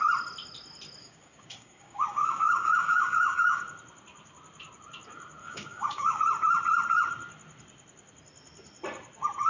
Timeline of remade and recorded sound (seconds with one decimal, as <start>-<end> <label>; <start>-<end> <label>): 0.0-1.0 recorded; 1.0-3.6 remade; 3.6-5.4 recorded; 5.4-6.2 remade; 6.2-9.5 recorded